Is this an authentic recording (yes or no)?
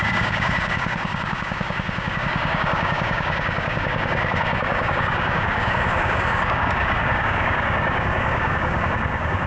no